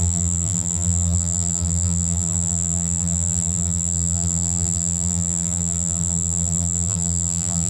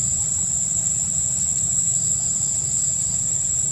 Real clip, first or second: second